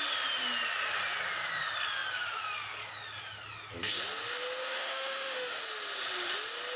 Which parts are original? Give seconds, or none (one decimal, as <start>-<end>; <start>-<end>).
0.0-4.6; 5.6-6.8